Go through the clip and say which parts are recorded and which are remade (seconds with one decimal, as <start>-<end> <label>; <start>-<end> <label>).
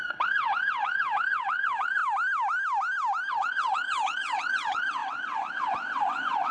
0.0-2.0 remade; 2.0-3.3 recorded; 3.3-6.5 remade